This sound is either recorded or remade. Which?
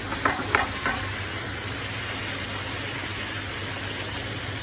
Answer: recorded